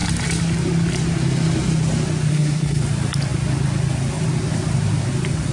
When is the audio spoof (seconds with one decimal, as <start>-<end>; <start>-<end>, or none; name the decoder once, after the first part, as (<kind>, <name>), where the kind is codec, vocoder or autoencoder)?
2.3-2.8 (codec, SNAC)